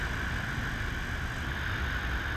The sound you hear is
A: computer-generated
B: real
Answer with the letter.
B